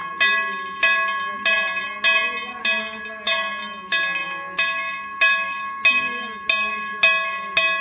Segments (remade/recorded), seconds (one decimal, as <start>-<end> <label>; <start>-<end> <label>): 0.0-7.8 recorded